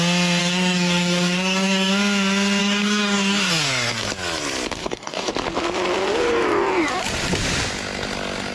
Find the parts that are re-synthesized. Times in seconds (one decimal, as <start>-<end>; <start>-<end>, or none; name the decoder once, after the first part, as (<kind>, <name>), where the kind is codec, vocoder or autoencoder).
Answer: 0.4-1.9 (codec, DAC); 2.6-3.5; 4.8-5.3